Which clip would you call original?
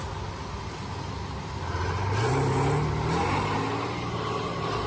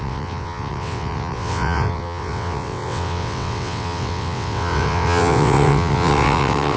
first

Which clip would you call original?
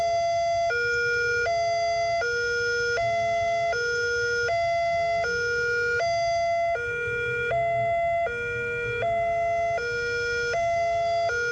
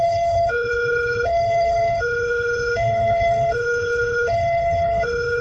first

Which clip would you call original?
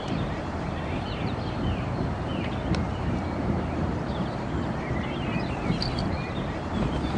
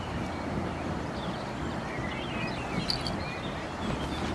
second